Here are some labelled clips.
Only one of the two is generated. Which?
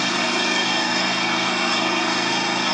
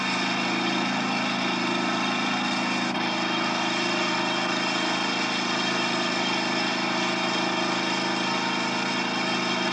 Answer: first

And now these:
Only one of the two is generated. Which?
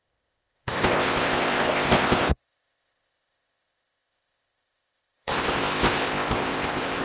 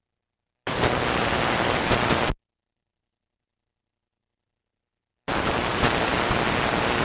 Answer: first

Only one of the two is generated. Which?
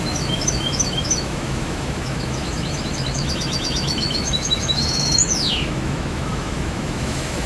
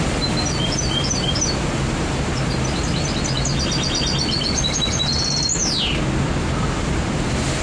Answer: first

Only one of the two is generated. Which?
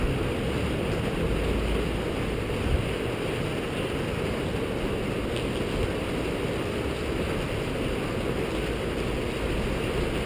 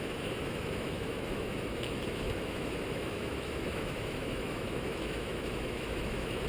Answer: second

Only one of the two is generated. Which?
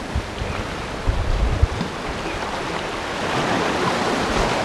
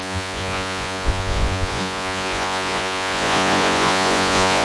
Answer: second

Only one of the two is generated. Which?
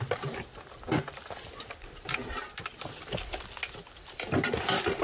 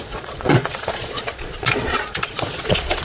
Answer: second